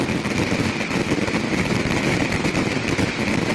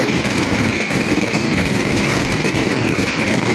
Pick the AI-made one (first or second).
second